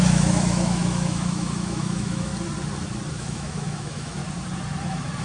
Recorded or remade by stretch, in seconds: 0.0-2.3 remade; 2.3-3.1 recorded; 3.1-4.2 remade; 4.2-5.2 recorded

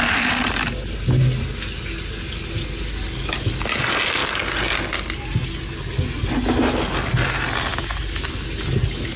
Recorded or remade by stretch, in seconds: 0.0-9.2 recorded

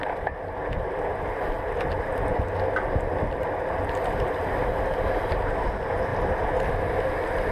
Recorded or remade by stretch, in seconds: 0.0-7.5 recorded

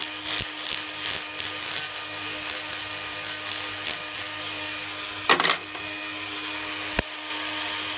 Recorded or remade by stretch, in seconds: 0.0-8.0 recorded

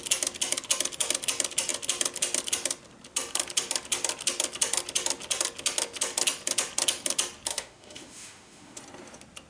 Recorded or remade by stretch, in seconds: 0.0-7.5 recorded; 7.5-8.8 remade; 8.8-9.5 recorded

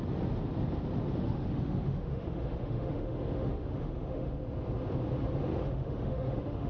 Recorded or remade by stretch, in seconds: 0.0-1.2 recorded; 1.2-4.3 remade; 4.3-5.5 recorded; 5.5-6.7 remade

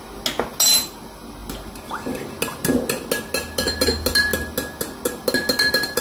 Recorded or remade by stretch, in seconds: 0.0-6.0 recorded